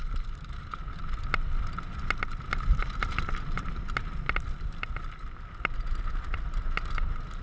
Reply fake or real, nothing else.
real